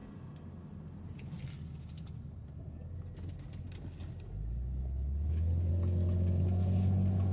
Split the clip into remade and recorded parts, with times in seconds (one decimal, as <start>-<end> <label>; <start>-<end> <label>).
0.0-4.8 recorded; 4.8-5.7 remade; 5.7-7.3 recorded